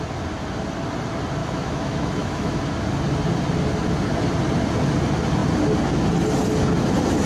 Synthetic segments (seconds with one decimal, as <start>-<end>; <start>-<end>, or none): 1.4-2.6